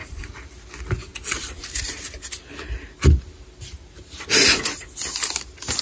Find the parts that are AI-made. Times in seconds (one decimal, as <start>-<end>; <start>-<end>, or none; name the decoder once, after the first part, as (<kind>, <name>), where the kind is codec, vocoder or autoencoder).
0.0-0.5 (vocoder, BigVGAN v2)